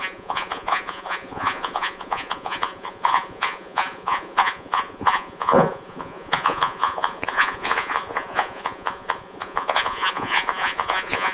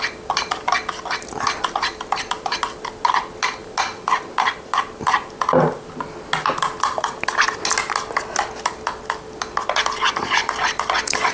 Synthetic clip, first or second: first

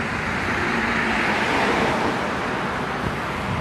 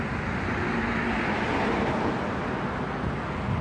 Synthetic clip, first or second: first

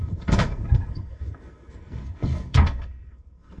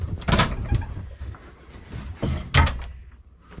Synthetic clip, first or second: first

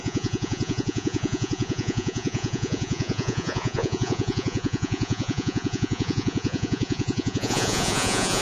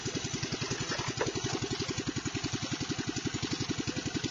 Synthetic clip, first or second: first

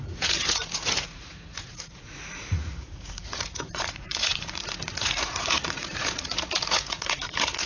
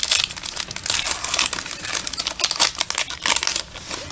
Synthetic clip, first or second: first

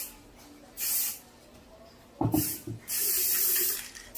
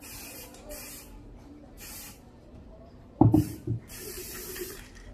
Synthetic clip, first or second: second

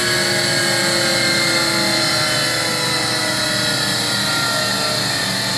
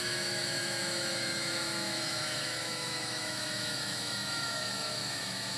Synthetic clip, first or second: second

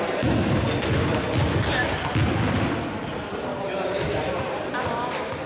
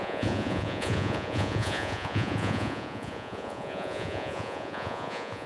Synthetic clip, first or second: second